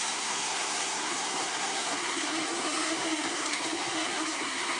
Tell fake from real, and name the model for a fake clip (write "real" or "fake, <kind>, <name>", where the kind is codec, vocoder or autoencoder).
fake, codec, SNAC